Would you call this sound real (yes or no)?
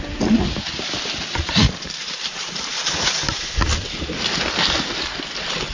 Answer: yes